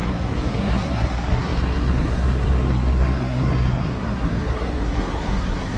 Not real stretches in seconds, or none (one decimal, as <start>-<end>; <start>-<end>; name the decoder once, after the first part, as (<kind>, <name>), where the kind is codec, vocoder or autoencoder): 0.0-5.8 (codec, SNAC)